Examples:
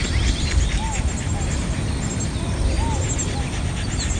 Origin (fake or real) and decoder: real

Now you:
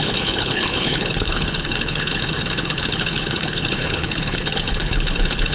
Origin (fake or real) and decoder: fake, codec, HILCodec